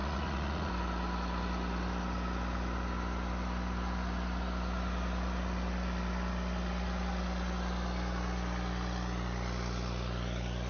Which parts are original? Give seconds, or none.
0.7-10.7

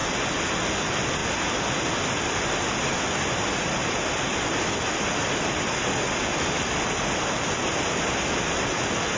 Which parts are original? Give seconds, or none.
0.0-9.2

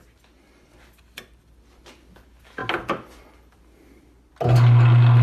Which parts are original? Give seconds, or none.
0.0-5.2

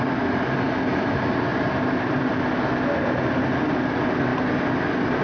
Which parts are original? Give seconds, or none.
0.0-5.2

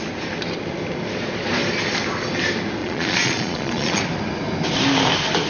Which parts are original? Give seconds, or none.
0.0-2.8; 4.0-5.5

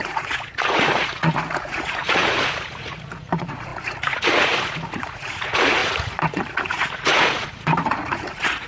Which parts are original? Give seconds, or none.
none

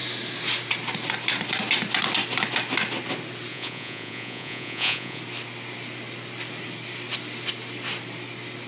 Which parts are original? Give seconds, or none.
0.0-3.5; 5.2-8.7